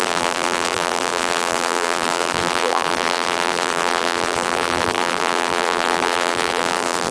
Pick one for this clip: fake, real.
fake